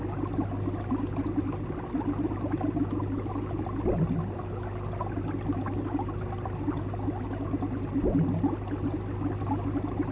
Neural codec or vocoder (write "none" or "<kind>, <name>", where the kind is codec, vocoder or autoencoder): none